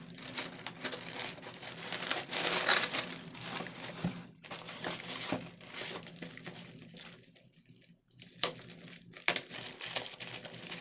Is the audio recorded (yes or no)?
no